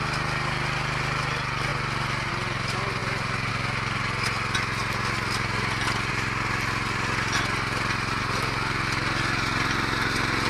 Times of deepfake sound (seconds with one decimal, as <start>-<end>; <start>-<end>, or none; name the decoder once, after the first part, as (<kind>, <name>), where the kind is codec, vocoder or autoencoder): none